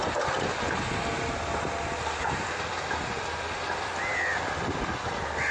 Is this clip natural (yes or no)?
yes